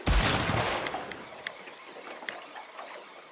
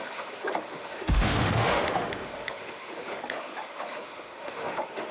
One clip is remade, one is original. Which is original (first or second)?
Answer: first